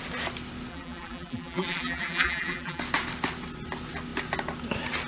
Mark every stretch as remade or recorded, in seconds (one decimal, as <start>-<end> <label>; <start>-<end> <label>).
0.0-0.7 recorded; 0.7-2.8 remade; 2.8-5.1 recorded